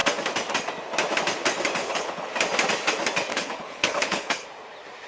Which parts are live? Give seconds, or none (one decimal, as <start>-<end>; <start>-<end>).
0.0-1.8; 2.3-3.3; 4.5-5.1

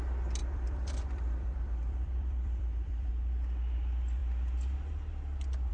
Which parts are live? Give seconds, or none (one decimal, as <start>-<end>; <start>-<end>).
0.0-0.4; 3.1-5.7

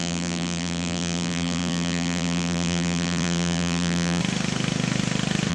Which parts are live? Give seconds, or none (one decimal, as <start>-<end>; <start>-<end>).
4.2-5.5

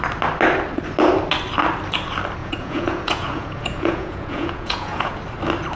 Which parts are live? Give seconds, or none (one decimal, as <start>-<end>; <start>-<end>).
0.0-2.4; 5.2-5.8